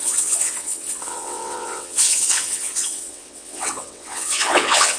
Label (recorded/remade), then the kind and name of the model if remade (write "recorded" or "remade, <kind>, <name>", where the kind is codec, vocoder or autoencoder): remade, vocoder, WaveNeXt